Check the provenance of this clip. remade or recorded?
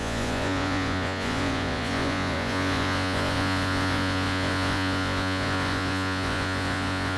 remade